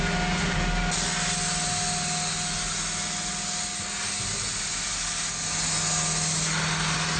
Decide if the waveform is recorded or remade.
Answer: recorded